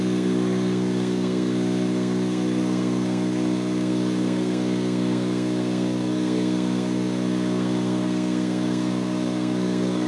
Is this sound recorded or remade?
remade